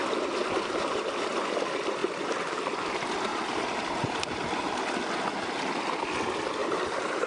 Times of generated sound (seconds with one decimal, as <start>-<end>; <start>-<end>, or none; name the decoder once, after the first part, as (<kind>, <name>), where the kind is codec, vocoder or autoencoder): 0.4-1.3 (vocoder, BigVGAN v2); 3.3-4.5; 6.6-7.3